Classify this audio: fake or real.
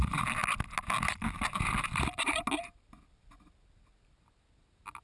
real